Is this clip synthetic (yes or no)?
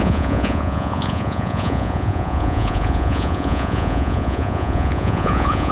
yes